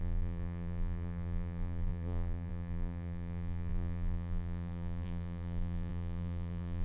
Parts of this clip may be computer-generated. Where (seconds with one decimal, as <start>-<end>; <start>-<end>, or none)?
0.0-6.8